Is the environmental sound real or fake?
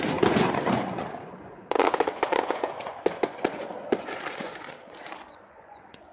fake